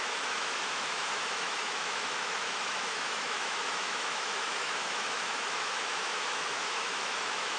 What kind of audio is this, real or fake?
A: fake